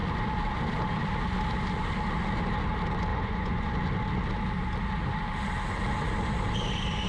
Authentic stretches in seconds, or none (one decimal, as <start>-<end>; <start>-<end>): 0.0-3.1; 3.7-7.1